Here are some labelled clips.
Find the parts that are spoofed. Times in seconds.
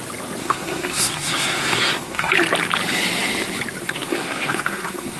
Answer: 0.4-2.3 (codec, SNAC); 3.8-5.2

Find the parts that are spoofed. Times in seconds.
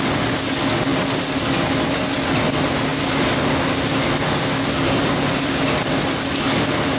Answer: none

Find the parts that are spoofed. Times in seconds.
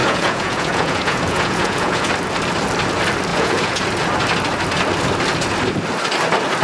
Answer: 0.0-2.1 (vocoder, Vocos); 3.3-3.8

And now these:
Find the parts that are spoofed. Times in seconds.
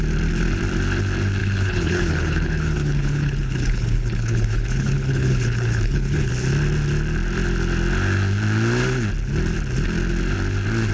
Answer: 1.4-6.3 (codec, HILCodec)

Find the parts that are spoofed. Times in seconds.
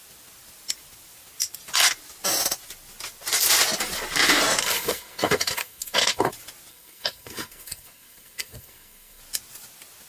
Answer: 4.6-6.3 (codec, SNAC); 6.7-9.2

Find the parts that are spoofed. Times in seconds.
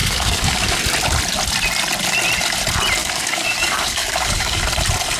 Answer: 0.0-0.8 (codec, DAC); 3.0-4.6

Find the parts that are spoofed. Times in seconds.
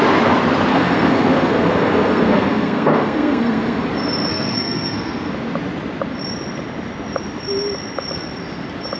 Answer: 0.7-3.9 (codec, SNAC); 4.3-5.3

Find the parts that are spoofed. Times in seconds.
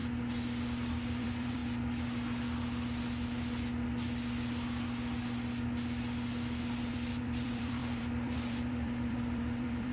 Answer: 1.2-1.6 (vocoder, BigVGAN v2); 6.9-9.9